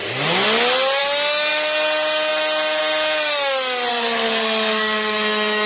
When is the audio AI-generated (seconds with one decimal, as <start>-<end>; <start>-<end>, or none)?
3.9-5.7